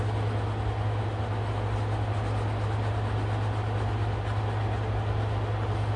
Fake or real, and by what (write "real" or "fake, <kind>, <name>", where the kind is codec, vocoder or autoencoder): real